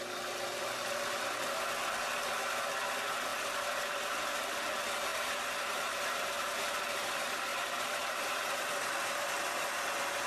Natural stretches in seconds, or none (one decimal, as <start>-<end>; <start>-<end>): 0.0-5.1; 6.5-7.5; 8.3-10.3